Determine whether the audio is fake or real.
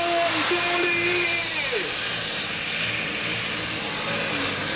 real